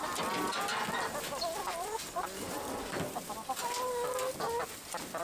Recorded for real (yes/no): yes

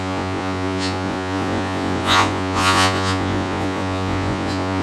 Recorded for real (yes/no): no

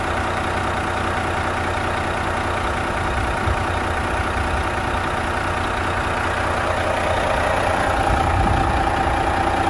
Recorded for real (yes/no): yes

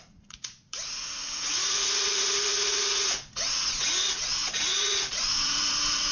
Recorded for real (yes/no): no